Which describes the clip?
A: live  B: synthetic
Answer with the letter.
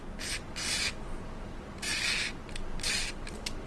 A